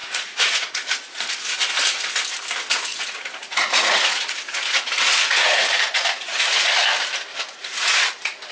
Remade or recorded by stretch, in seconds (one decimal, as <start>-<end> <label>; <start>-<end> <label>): 0.0-1.3 remade; 1.3-2.9 recorded; 2.9-6.7 remade; 6.7-7.3 recorded; 7.3-8.1 remade; 8.1-8.5 recorded